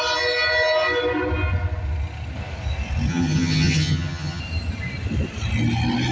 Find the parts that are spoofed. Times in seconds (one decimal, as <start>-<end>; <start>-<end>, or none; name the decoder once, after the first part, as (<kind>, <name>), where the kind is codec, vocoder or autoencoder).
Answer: 3.1-4.4 (vocoder, HiFi-GAN)